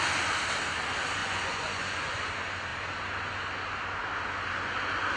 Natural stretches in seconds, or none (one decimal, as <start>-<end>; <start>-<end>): 0.0-1.2; 2.2-5.2